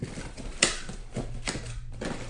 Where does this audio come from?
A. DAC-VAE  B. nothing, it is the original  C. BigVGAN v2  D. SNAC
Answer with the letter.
C